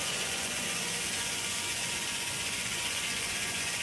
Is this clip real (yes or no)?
no